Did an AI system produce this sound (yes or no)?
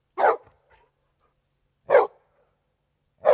no